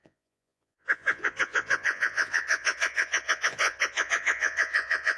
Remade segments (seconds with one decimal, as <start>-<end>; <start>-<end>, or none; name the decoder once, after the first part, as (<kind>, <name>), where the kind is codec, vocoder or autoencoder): 0.0-5.2 (vocoder, Vocos)